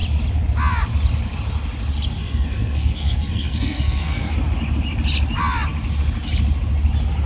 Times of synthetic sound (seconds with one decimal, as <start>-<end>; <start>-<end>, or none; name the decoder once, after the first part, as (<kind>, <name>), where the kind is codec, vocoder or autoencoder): 2.2-4.3 (codec, SNAC)